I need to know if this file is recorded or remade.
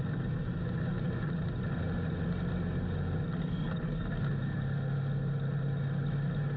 recorded